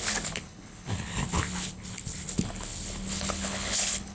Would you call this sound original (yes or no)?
no